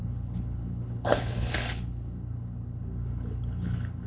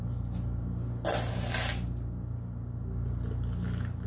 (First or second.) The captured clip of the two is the second